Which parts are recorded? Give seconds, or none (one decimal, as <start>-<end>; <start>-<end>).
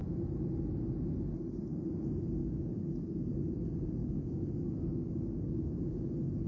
0.0-2.4; 3.1-4.0